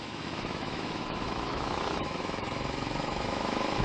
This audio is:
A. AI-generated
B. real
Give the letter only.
A